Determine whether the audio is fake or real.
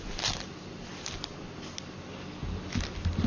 real